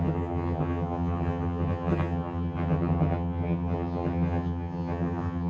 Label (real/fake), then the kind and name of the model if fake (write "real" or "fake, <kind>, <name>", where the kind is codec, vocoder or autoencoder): fake, vocoder, HiFi-GAN